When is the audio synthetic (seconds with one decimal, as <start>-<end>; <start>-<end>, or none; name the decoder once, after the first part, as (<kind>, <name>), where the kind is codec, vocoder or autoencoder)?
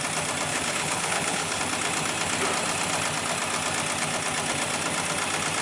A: 0.5-1.6 (codec, HILCodec)